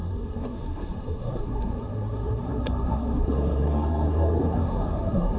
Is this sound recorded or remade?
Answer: remade